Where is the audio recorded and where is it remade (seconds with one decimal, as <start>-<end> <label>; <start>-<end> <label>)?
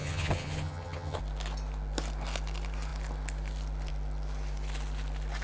0.0-1.2 remade; 1.2-5.4 recorded